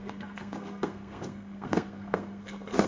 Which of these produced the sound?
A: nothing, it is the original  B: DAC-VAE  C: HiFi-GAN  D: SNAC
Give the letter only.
D